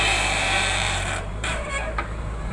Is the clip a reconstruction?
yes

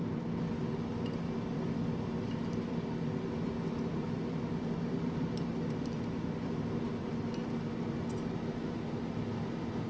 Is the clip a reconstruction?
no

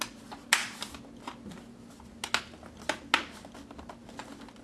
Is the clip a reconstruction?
no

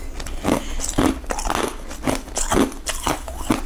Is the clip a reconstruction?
no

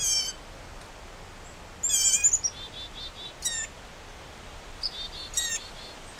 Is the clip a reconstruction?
no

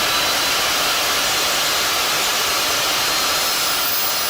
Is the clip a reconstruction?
no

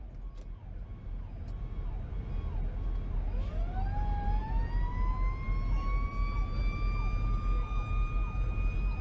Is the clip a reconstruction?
no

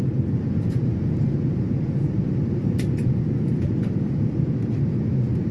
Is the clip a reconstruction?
no